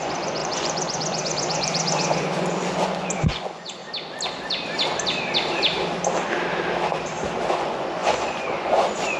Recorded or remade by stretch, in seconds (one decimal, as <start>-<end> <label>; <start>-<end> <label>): 0.0-3.8 remade; 3.8-7.5 recorded; 7.5-9.2 remade